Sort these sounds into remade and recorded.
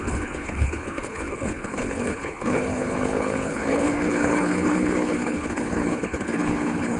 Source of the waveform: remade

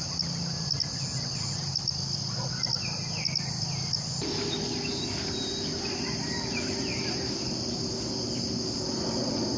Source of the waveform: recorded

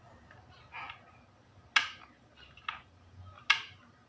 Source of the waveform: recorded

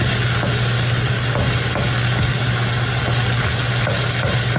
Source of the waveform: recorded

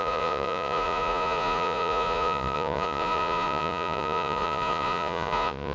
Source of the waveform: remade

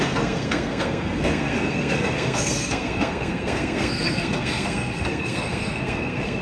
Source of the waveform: remade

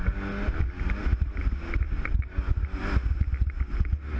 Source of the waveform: recorded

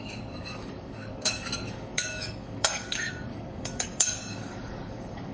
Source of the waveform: remade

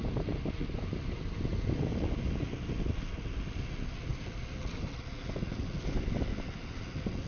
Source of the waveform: recorded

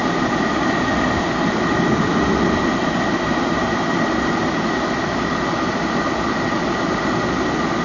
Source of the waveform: recorded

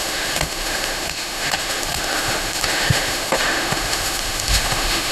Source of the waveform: remade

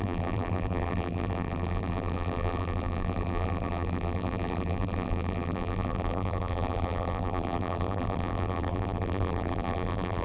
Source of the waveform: remade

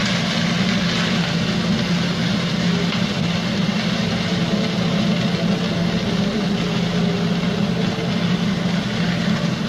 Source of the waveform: remade